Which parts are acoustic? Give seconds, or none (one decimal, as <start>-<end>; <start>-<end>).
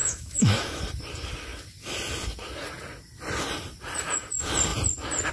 0.8-5.3